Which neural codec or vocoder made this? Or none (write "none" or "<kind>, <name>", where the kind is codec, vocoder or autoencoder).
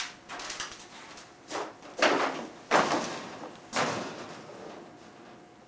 none